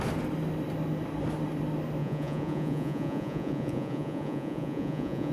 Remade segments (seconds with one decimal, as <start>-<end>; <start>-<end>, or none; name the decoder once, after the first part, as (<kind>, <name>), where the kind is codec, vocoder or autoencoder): 2.0-5.3 (vocoder, Vocos)